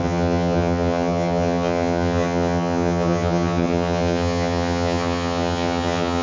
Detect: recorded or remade remade